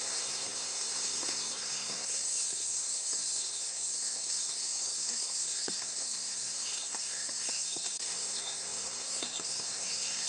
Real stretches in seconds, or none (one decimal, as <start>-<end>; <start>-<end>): none

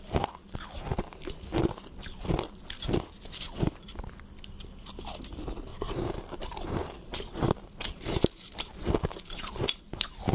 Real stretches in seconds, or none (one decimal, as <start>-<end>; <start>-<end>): 0.0-5.7; 9.8-10.3

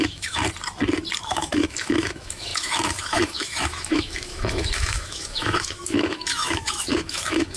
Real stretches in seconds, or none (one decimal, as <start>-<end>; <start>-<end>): 0.4-1.2

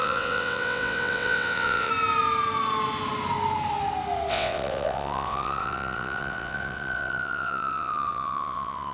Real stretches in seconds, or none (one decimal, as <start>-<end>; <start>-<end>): 1.9-4.3

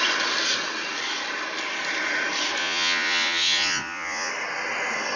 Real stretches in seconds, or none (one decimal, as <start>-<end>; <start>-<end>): 0.0-2.6; 4.3-5.2

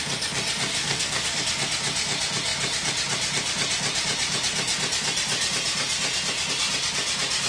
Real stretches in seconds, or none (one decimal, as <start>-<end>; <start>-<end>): 0.0-0.7; 1.4-7.5